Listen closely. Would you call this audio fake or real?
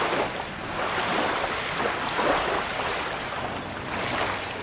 real